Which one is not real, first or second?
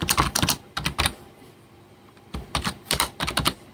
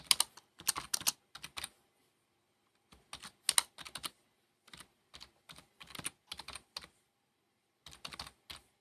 first